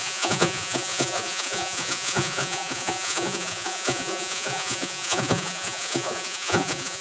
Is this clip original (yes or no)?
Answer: no